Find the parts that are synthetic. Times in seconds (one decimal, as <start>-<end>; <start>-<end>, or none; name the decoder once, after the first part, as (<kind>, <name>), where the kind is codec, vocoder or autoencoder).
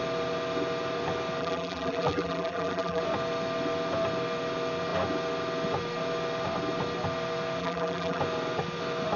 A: 1.4-3.0 (vocoder, BigVGAN v2); 7.6-8.2